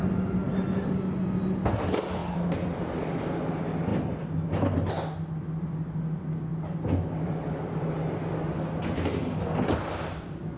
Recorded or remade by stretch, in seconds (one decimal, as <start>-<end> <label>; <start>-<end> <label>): 0.0-2.2 recorded; 2.2-2.8 remade; 2.8-10.6 recorded

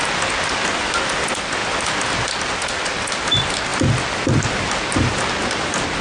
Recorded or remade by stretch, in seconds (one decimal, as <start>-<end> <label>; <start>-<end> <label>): 0.0-6.0 recorded